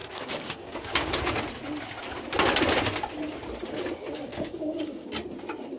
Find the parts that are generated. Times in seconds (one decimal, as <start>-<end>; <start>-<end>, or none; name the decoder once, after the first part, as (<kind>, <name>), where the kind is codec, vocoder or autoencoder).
0.0-1.1 (codec, DAC); 4.3-5.1